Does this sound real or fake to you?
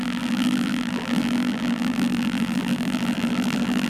fake